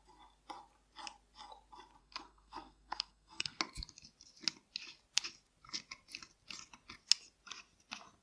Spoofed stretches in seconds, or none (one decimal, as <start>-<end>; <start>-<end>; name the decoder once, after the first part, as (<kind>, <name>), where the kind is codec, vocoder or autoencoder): 2.0-3.6 (codec, SNAC)